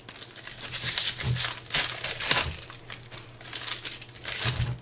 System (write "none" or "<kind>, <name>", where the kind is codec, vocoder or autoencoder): none